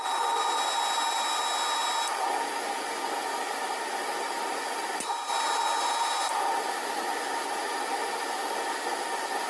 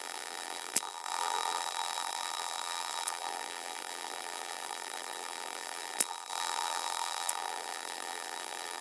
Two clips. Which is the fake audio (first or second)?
second